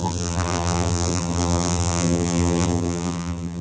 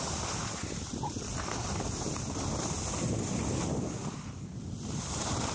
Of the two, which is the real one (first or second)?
second